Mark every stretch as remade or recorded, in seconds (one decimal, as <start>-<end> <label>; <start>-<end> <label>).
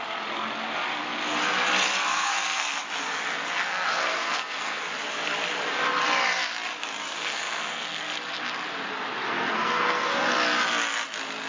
0.0-2.1 recorded; 2.1-2.8 remade; 2.8-3.7 recorded; 3.7-4.8 remade; 4.8-7.1 recorded; 7.1-8.0 remade; 8.0-9.3 recorded; 9.3-10.3 remade; 10.3-11.5 recorded